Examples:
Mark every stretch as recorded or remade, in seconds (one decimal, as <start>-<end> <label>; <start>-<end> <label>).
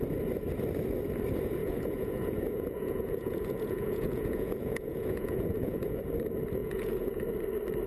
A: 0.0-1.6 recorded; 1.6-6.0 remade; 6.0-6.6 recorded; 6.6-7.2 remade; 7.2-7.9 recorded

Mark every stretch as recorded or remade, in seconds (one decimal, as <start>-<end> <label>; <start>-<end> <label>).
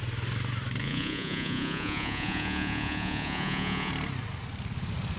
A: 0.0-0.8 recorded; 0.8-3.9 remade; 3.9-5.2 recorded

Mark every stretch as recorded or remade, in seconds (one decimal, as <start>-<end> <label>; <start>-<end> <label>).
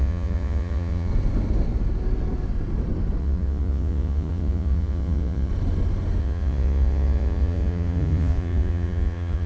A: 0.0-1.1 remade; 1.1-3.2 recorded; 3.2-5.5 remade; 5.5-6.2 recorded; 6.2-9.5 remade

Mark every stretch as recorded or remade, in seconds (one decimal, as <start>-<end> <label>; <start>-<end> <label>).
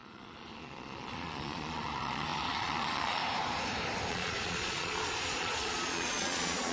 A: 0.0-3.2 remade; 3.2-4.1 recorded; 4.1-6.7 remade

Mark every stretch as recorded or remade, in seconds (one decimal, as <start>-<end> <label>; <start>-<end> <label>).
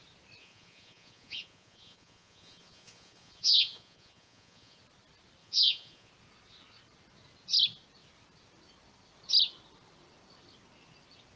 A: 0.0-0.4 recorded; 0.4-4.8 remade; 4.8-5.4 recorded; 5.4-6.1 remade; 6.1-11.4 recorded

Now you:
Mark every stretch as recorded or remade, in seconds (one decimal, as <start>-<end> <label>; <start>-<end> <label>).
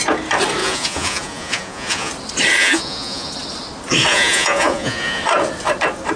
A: 0.0-0.6 recorded; 0.6-2.1 remade; 2.1-2.6 recorded; 2.6-3.3 remade; 3.3-4.1 recorded; 4.1-5.2 remade; 5.2-6.2 recorded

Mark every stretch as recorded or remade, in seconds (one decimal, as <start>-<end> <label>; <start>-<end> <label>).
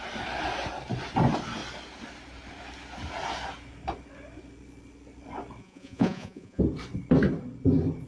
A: 0.0-5.6 recorded; 5.6-6.6 remade; 6.6-8.1 recorded